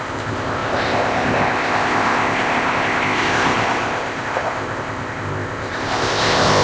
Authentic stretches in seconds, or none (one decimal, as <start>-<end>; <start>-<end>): none